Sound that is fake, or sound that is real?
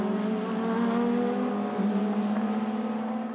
real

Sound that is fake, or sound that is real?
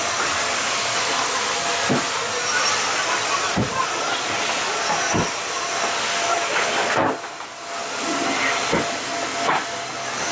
real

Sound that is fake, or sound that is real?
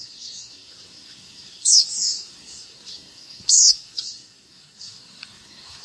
fake